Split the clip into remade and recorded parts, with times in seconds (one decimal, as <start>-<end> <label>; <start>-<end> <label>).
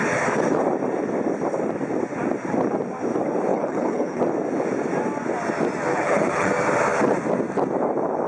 0.0-3.5 recorded; 3.5-4.2 remade; 4.2-5.9 recorded; 5.9-6.5 remade; 6.5-8.3 recorded